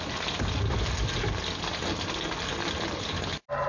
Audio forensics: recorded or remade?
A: recorded